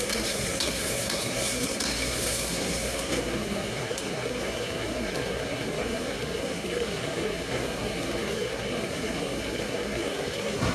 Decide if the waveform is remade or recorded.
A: remade